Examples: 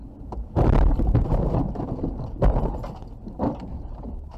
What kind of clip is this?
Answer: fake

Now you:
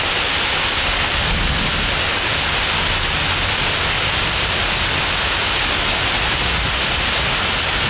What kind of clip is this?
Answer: real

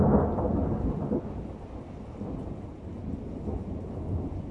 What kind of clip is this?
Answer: real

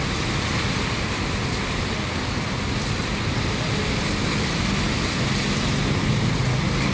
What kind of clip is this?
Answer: real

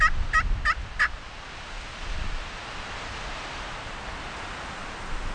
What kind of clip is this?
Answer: real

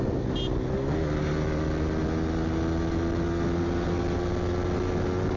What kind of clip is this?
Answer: real